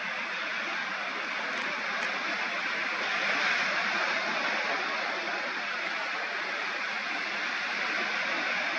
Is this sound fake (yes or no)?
no